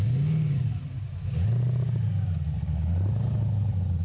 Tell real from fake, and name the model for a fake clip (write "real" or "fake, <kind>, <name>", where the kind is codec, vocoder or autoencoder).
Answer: real